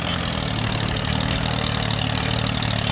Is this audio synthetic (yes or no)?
no